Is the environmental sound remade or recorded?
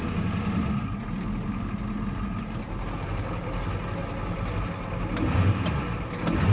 recorded